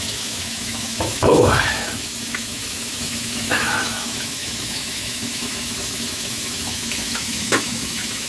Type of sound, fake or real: fake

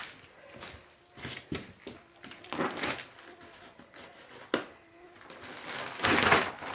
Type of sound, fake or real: real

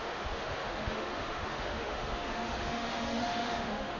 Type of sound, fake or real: fake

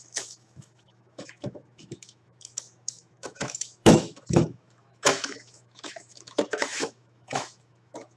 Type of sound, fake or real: fake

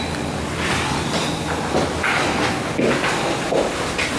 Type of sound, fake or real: real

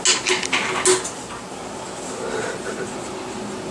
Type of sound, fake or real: real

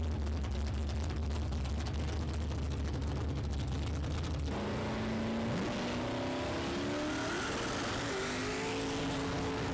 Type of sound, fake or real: real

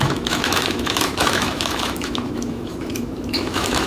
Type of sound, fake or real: fake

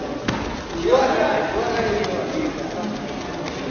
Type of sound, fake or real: real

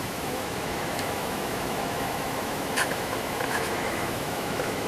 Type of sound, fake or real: fake